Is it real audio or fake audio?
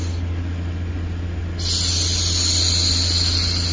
real